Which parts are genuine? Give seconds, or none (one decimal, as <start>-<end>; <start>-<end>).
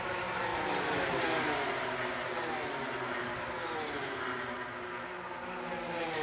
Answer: 0.0-6.2